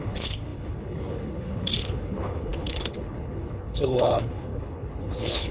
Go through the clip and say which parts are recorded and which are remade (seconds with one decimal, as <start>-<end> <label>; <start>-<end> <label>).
0.0-5.5 remade